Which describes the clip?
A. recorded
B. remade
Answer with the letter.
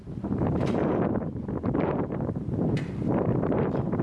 B